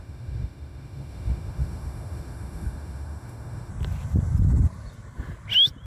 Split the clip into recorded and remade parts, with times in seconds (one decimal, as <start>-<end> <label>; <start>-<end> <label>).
0.0-3.7 remade; 3.7-5.9 recorded